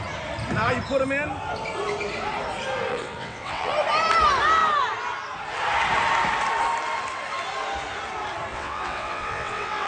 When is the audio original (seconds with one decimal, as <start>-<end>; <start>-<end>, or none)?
0.0-2.9; 3.7-8.5